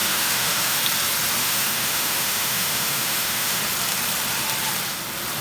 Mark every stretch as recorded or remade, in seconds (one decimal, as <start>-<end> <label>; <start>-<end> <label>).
0.0-0.8 remade; 0.8-1.4 recorded; 1.4-3.6 remade; 3.6-5.4 recorded